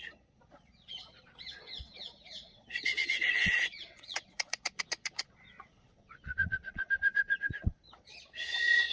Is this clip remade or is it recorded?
remade